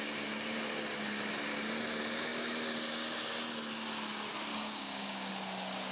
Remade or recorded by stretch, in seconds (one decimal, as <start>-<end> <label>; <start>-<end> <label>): 0.0-4.5 recorded; 4.5-5.3 remade; 5.3-5.9 recorded